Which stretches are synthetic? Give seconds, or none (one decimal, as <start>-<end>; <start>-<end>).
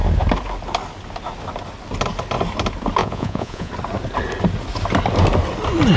3.0-3.7